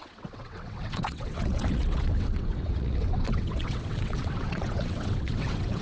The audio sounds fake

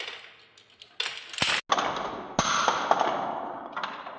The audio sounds real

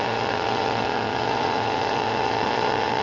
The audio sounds fake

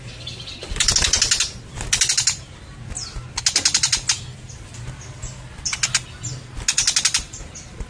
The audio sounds real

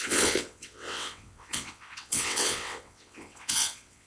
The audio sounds fake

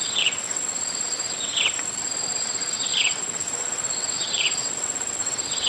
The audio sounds fake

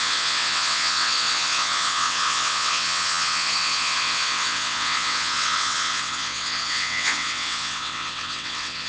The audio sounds fake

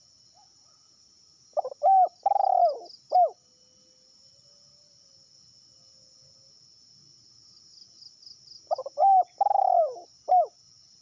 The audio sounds real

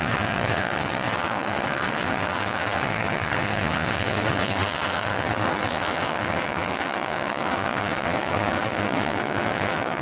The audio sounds fake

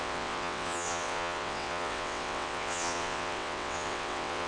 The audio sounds fake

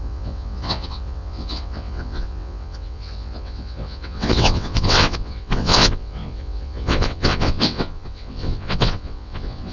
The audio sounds fake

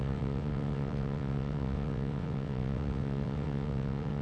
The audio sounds fake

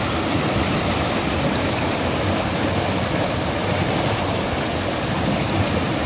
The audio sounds real